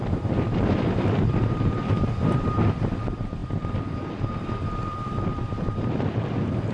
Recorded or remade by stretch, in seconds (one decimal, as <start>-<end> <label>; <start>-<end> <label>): 0.0-6.7 remade